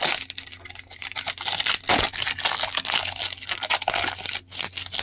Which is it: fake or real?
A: real